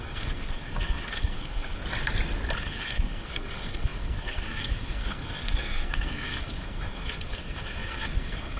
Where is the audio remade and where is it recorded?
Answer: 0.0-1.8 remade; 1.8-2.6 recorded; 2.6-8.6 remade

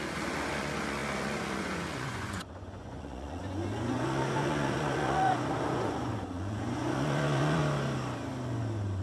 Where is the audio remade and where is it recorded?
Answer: 0.0-7.6 remade; 7.6-9.0 recorded

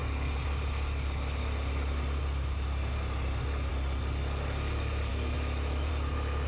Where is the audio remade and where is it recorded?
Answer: 0.0-5.1 recorded; 5.1-5.9 remade; 5.9-6.5 recorded

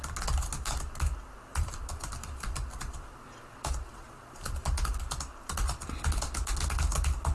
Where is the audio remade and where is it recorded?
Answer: 0.0-1.5 recorded; 1.5-4.8 remade; 4.8-7.3 recorded

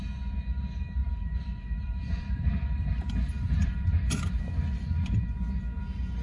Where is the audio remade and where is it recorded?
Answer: 0.0-1.0 recorded; 1.0-4.4 remade; 4.4-6.2 recorded

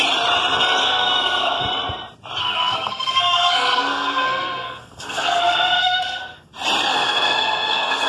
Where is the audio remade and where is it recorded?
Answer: 0.0-0.8 recorded; 0.8-1.6 remade; 1.6-2.4 recorded; 2.4-6.5 remade; 6.5-6.9 recorded; 6.9-8.1 remade

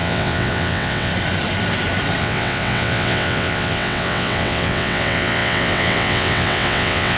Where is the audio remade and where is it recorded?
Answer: 0.0-1.1 remade; 1.1-2.2 recorded; 2.2-7.2 remade